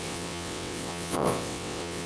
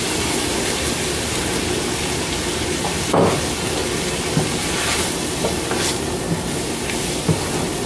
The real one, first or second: second